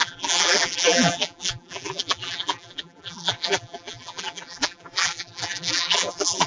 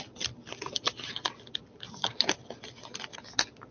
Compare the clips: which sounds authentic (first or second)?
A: second